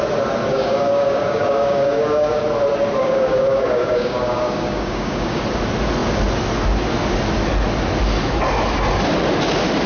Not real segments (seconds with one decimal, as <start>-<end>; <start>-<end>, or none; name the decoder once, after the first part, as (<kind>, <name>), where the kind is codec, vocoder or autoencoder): 0.5-2.4 (codec, DAC); 3.0-5.4